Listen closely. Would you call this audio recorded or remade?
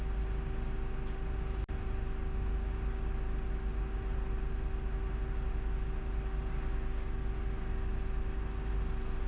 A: recorded